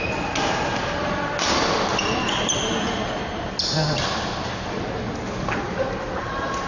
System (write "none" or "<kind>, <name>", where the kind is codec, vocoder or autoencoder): none